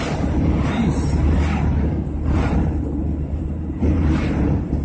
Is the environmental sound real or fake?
fake